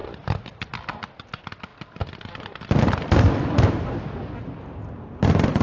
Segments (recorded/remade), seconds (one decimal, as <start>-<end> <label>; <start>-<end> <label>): 0.0-5.6 recorded